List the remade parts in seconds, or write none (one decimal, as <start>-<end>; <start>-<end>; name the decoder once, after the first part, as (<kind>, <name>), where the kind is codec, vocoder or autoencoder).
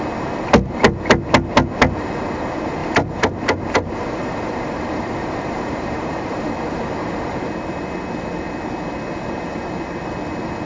2.8-6.5 (vocoder, BigVGAN v2)